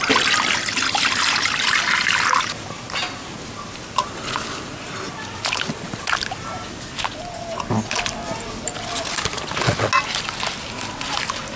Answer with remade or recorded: recorded